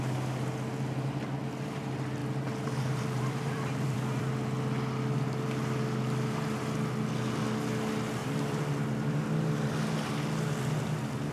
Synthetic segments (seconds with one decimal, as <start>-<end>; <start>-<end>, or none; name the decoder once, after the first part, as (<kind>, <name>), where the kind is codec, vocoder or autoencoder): 2.2-4.3 (vocoder, BigVGAN v2); 8.2-9.2